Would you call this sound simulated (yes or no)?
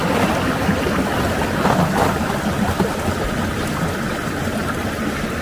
no